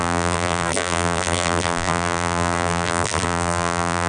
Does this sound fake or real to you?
fake